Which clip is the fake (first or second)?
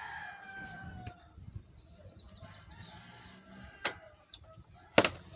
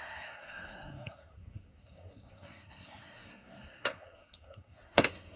second